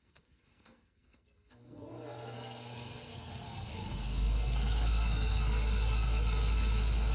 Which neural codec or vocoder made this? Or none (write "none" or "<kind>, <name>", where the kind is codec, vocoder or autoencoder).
codec, SNAC